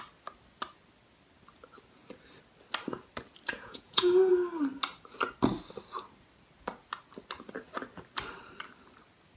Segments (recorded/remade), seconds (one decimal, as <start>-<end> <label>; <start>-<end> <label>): 0.0-3.5 recorded; 3.5-4.3 remade; 4.3-9.4 recorded